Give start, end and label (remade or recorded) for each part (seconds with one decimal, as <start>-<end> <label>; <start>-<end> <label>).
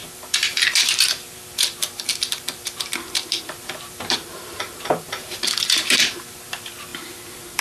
0.0-7.6 remade